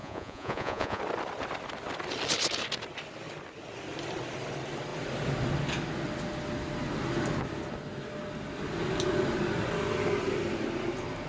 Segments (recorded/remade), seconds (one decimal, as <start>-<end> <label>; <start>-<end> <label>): 0.0-1.0 remade; 1.0-11.3 recorded